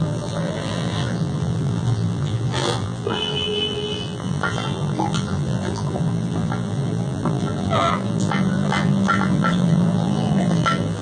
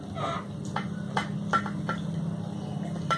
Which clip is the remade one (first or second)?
first